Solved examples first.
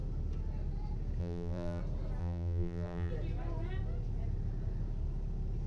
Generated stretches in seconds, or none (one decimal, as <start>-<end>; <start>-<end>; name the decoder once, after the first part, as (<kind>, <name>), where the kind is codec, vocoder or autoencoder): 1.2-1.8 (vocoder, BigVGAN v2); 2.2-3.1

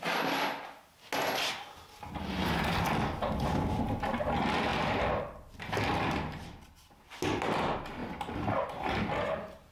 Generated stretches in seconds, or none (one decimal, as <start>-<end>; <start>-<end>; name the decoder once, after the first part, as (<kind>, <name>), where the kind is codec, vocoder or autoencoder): none

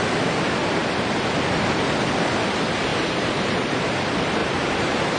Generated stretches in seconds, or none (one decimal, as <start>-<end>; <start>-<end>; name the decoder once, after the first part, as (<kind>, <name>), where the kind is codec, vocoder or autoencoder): 2.9-3.9 (vocoder, BigVGAN v2); 4.4-5.2

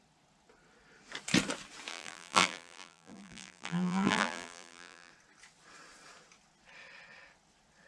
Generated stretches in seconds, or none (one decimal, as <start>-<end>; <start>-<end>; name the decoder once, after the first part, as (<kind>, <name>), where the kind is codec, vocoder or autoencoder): 1.9-5.1 (vocoder, BigVGAN v2)

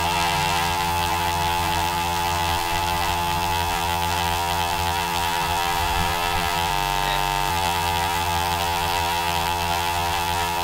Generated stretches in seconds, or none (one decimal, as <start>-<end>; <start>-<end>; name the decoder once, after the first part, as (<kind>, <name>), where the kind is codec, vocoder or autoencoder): 0.0-6.7 (vocoder, BigVGAN v2); 7.5-10.6

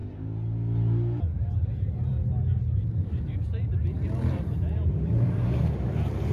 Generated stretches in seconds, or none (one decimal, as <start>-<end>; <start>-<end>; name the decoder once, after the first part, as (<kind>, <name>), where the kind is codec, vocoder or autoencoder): 1.6-2.1 (vocoder, BigVGAN v2); 2.6-6.3

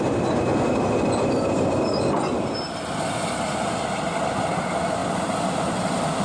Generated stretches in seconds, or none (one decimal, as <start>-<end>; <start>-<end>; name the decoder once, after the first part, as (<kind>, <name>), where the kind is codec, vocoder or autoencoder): 0.0-0.5 (vocoder, BigVGAN v2); 4.2-6.2

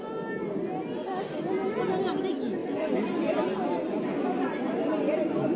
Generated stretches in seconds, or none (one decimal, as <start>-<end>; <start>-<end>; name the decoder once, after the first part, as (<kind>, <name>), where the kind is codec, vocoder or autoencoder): 2.6-3.3 (vocoder, BigVGAN v2); 4.1-4.7